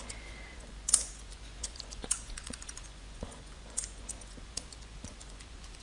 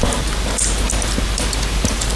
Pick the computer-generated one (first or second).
first